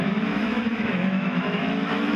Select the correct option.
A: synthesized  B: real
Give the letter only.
A